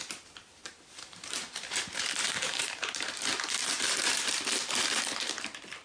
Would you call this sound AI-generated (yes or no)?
yes